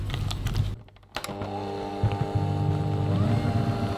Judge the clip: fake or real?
real